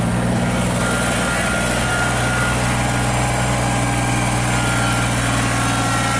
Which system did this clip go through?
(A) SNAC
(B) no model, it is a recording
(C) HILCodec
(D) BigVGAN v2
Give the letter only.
B